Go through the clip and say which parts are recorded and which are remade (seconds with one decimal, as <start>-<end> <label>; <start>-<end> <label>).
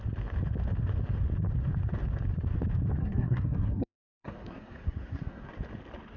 0.0-3.0 recorded; 3.0-5.5 remade; 5.5-6.2 recorded